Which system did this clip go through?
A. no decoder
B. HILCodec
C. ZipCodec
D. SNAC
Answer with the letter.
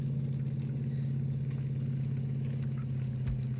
A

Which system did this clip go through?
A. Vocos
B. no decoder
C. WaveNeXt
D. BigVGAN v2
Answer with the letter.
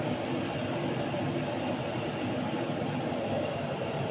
B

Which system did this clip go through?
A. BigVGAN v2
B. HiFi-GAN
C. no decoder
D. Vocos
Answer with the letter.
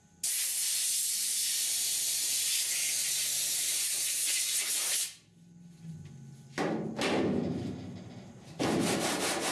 C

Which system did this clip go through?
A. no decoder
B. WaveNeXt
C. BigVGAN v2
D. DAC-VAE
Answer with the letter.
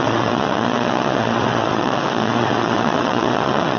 B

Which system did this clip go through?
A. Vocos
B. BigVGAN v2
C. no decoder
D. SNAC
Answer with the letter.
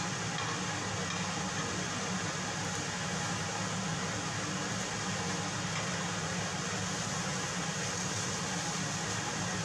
C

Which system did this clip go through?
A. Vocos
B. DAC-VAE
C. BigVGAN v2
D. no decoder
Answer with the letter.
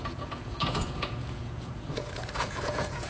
A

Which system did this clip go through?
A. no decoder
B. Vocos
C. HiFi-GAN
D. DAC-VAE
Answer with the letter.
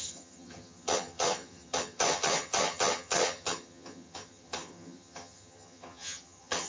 C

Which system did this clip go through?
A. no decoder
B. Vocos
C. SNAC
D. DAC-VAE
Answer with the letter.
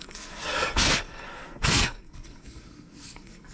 C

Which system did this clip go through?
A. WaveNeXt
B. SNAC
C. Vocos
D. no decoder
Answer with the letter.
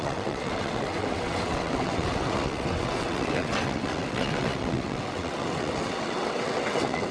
A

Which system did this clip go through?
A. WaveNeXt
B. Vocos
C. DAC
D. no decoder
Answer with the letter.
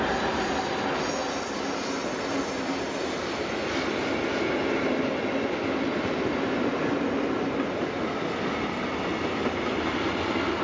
D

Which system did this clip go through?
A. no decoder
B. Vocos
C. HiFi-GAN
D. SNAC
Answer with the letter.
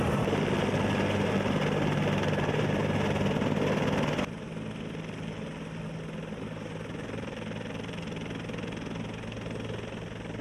A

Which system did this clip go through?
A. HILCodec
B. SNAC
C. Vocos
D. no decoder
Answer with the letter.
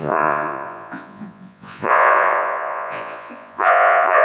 C